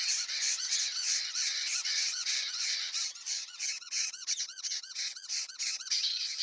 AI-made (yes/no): yes